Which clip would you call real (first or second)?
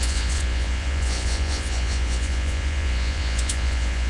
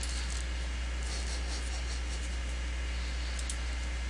second